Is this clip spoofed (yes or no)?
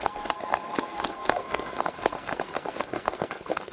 yes